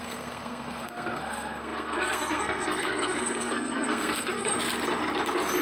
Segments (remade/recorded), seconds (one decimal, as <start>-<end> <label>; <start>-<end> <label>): 0.0-4.5 remade; 4.5-5.6 recorded